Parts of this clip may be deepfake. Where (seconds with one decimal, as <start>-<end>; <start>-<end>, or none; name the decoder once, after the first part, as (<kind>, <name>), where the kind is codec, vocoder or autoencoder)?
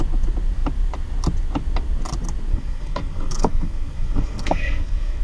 2.5-5.2 (codec, SNAC)